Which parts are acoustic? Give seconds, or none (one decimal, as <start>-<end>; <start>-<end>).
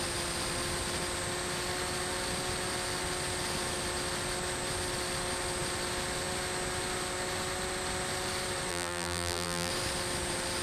0.0-8.7; 9.7-10.6